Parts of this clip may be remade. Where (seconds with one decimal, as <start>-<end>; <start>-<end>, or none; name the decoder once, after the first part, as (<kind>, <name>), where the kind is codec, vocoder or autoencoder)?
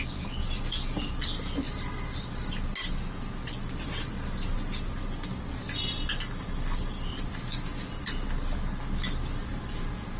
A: 9.5-10.2 (vocoder, BigVGAN v2)